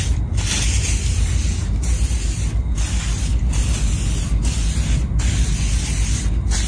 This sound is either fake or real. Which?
real